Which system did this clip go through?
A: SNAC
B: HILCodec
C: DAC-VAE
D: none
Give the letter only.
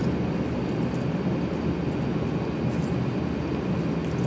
D